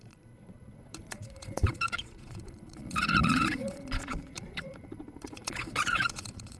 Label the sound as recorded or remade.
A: remade